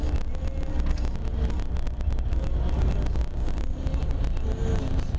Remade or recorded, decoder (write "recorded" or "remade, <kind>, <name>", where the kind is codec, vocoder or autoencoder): recorded